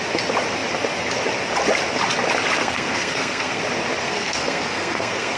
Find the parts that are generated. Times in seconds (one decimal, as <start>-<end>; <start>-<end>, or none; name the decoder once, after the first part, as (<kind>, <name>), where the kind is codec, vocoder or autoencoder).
2.6-3.6 (codec, SNAC); 4.0-5.4